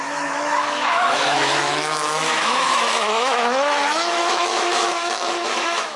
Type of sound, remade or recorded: remade